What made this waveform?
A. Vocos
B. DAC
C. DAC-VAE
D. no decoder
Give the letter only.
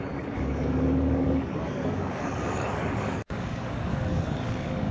B